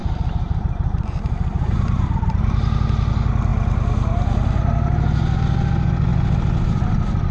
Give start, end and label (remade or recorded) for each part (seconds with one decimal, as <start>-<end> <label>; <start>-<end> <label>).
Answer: 0.0-2.4 remade; 2.4-7.3 recorded